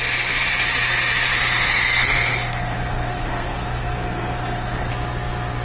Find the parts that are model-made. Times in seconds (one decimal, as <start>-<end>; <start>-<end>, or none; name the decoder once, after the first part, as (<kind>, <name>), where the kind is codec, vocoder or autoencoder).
1.5-4.9 (codec, SNAC)